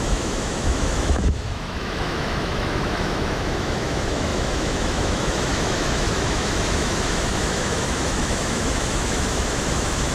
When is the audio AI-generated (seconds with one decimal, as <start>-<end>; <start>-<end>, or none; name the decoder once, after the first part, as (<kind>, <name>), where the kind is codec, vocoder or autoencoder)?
0.0-10.1 (autoencoder, DAC-VAE)